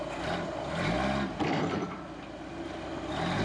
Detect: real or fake real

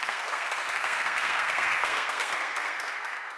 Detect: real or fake fake